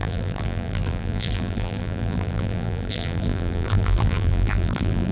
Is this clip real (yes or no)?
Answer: no